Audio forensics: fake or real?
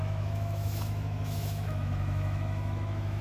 fake